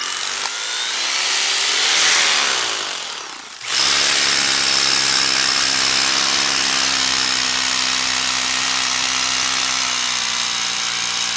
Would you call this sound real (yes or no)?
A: yes